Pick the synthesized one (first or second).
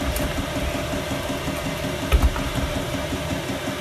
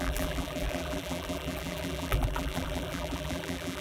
second